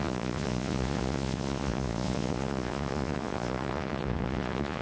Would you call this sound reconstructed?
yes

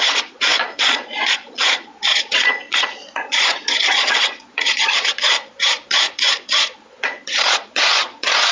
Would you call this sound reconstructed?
yes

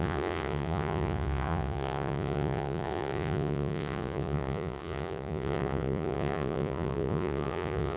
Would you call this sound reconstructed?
yes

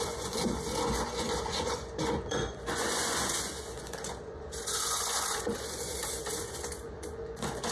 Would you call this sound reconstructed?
yes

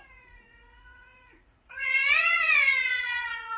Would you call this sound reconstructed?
yes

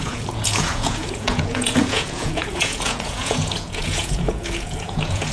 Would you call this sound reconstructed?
yes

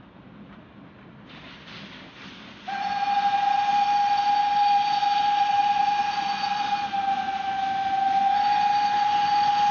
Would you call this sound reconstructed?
no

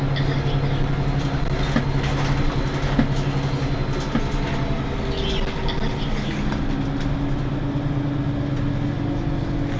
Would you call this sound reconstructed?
no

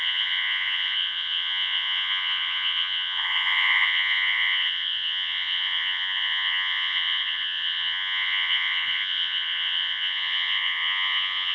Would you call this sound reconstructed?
yes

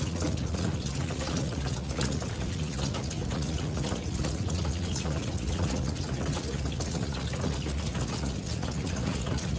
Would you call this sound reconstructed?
yes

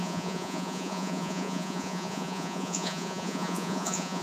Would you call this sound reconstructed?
yes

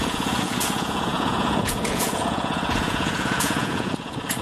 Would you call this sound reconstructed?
yes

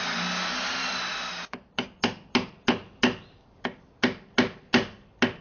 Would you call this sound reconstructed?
no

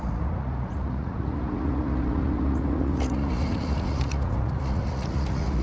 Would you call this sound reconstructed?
yes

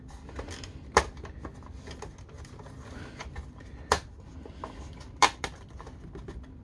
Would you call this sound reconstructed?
no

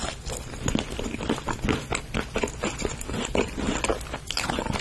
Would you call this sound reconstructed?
no